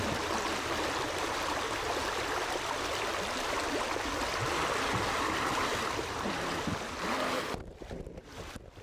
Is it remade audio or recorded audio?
recorded